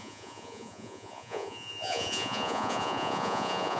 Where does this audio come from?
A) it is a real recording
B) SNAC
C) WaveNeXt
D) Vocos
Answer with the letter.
D